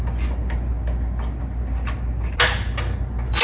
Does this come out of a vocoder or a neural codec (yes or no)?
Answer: no